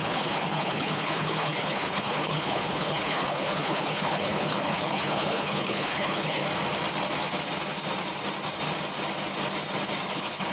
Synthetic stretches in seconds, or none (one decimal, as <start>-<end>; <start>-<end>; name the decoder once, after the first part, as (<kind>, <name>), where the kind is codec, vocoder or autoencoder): 0.0-6.4 (codec, HILCodec); 10.1-10.5